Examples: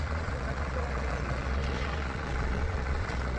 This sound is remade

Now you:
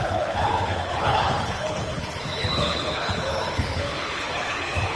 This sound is remade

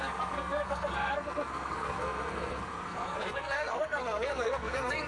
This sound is remade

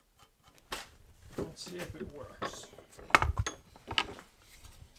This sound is recorded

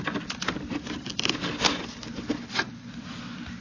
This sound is recorded